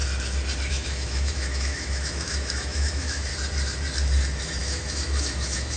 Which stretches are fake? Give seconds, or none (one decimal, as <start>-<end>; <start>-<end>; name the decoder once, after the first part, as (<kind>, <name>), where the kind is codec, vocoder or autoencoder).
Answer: 0.7-3.3 (autoencoder, DAC-VAE); 4.6-5.8